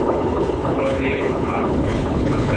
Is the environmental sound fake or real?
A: fake